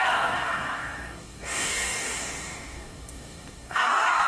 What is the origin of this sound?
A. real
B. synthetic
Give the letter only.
B